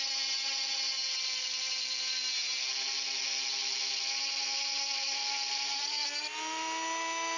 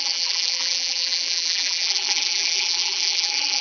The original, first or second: first